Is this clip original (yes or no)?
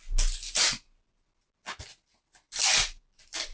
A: yes